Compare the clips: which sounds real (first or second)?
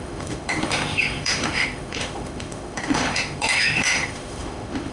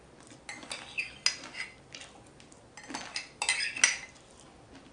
second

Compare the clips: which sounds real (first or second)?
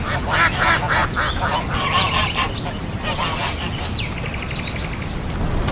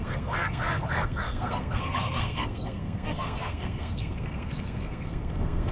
first